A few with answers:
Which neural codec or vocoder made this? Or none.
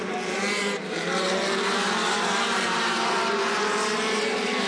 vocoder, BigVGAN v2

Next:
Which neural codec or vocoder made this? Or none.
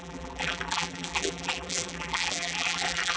vocoder, BigVGAN v2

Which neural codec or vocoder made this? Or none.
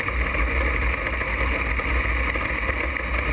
none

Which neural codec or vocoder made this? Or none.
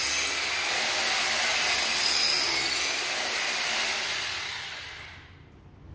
none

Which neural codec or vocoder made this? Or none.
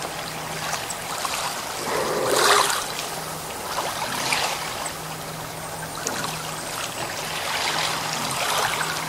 none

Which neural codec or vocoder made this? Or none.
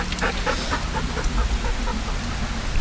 none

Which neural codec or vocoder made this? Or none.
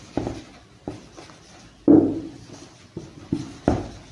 vocoder, BigVGAN v2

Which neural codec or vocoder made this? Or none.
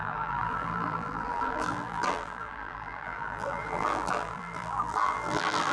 vocoder, BigVGAN v2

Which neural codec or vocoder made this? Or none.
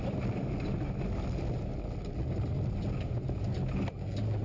none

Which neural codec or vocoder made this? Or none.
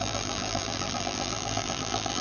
vocoder, BigVGAN v2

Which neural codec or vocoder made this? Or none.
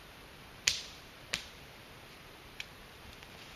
vocoder, BigVGAN v2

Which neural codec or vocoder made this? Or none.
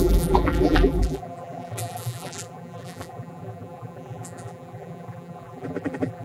vocoder, BigVGAN v2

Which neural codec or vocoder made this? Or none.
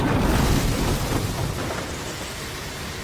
vocoder, BigVGAN v2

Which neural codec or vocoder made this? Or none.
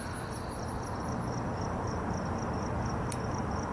none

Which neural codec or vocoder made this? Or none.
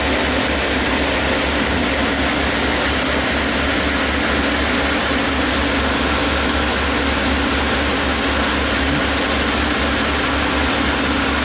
none